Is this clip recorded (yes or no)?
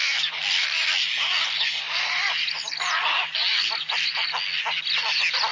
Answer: yes